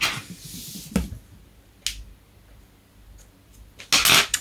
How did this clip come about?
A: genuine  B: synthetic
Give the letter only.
A